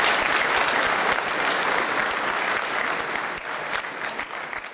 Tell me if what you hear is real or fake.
real